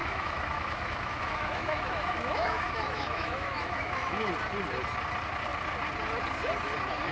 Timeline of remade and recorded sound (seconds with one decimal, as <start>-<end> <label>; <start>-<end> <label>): 0.0-4.3 remade; 4.3-7.1 recorded